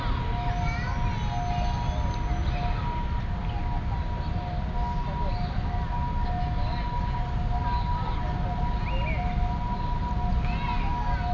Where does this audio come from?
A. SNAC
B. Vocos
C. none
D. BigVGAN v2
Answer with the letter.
C